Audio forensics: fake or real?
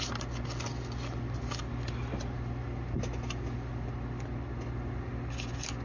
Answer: real